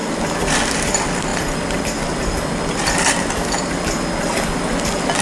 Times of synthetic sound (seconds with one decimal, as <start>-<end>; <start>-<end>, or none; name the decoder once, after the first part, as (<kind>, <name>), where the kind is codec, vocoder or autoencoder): none